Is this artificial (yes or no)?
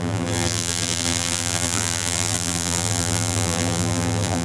yes